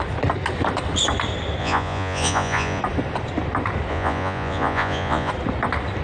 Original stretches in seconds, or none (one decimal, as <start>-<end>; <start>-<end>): 0.0-1.6; 2.8-3.9; 5.3-6.0